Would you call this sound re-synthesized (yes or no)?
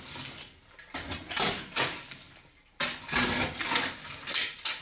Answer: no